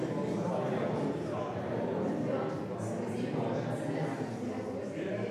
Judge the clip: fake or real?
real